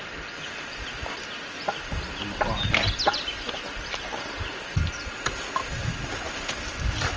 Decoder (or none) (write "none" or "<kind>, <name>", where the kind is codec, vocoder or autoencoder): none